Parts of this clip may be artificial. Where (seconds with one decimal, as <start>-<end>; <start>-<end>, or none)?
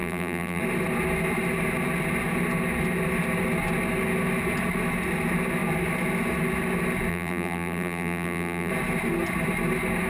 0.0-0.6; 7.1-8.7